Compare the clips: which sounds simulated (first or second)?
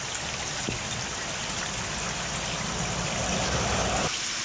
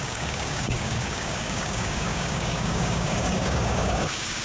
second